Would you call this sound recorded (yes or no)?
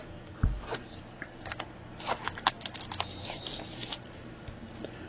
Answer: yes